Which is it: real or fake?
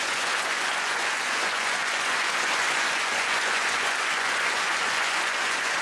fake